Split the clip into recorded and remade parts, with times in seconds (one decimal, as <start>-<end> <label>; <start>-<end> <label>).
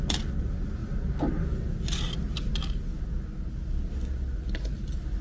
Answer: 0.0-5.2 recorded